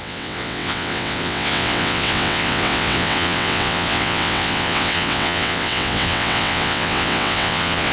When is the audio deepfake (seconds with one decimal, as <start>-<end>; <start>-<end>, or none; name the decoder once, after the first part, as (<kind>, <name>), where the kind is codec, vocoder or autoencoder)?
0.0-7.9 (vocoder, WaveNeXt)